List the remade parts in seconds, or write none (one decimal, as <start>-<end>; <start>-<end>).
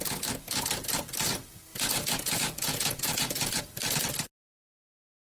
1.7-3.6